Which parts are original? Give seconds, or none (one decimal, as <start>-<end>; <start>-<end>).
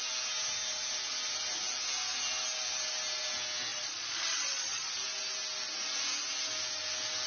0.0-3.7; 4.9-7.3